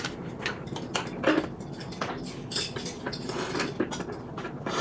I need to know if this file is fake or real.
real